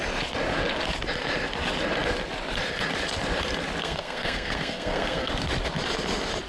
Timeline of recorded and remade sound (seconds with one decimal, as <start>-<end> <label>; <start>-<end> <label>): 0.0-3.8 recorded; 3.8-5.3 remade; 5.3-6.5 recorded